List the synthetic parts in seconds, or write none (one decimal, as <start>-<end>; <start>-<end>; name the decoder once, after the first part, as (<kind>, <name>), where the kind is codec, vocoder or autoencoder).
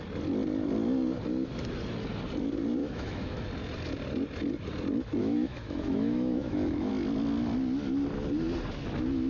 2.8-3.5 (autoencoder, DAC-VAE); 5.2-6.9